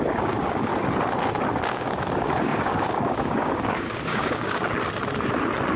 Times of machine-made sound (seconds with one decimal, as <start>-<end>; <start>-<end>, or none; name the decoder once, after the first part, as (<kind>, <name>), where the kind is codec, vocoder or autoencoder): 0.0-0.7 (codec, DAC); 1.6-4.8